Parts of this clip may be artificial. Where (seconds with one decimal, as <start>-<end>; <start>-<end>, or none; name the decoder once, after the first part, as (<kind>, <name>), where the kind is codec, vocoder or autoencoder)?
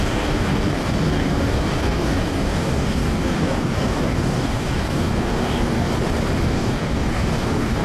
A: 0.0-5.9 (codec, DAC); 6.4-7.8